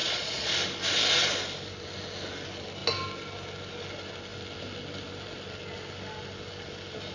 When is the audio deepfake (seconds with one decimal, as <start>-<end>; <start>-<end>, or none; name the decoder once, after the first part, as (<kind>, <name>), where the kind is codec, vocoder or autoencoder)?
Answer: 0.0-0.5 (vocoder, Vocos)